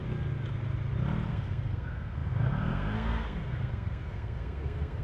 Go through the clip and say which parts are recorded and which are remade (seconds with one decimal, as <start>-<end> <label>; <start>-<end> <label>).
0.0-1.3 recorded; 1.3-5.0 remade

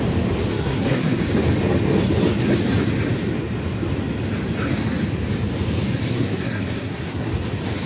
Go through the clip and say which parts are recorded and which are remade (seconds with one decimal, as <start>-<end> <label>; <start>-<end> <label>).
0.0-0.5 recorded; 0.5-1.2 remade; 1.2-6.1 recorded; 6.1-7.3 remade; 7.3-7.9 recorded

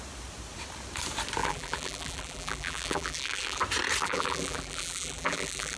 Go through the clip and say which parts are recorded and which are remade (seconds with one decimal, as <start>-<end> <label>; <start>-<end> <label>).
0.0-1.4 recorded; 1.4-3.6 remade; 3.6-4.0 recorded; 4.0-5.8 remade

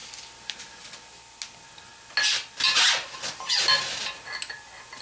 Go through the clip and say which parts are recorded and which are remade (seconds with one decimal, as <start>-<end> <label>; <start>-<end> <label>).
0.0-5.0 recorded

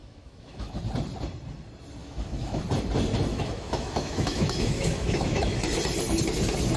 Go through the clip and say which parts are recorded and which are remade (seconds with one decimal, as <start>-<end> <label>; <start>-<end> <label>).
0.0-0.8 remade; 0.8-2.0 recorded; 2.0-2.6 remade; 2.6-3.3 recorded; 3.3-5.6 remade; 5.6-6.8 recorded

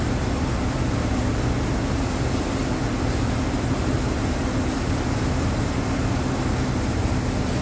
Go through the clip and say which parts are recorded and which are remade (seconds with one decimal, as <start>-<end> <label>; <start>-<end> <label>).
0.0-7.6 recorded